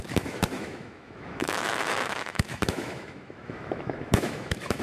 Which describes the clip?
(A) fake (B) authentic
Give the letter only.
A